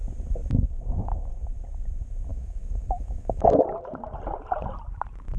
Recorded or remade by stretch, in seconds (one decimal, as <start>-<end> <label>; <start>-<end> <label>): 0.0-2.3 recorded; 2.3-3.6 remade; 3.6-5.4 recorded